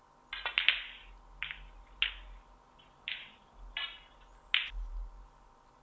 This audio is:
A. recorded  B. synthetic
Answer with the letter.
A